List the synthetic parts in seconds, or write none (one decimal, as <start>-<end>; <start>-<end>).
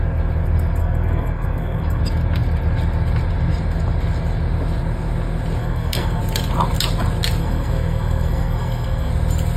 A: 0.8-2.0; 5.6-6.2; 7.4-9.1